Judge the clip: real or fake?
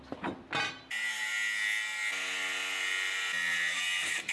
real